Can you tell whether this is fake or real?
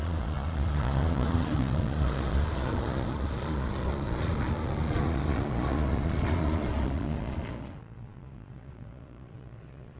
fake